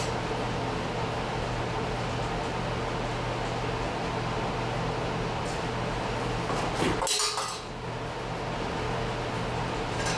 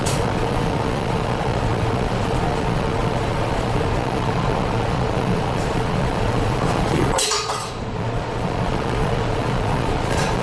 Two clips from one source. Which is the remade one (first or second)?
second